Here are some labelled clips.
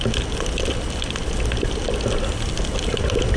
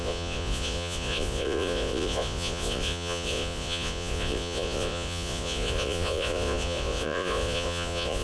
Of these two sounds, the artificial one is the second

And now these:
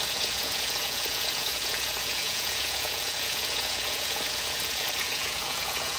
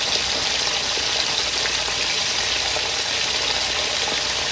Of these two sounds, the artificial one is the first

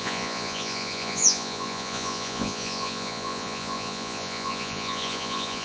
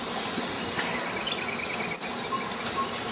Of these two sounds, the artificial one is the first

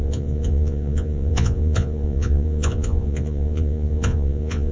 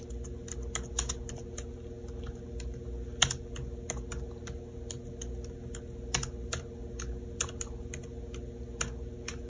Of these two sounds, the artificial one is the first